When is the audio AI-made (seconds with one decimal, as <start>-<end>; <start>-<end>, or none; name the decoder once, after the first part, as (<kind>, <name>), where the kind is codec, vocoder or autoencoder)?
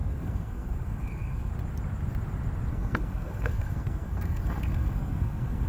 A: 0.0-1.5 (codec, SNAC); 2.7-5.7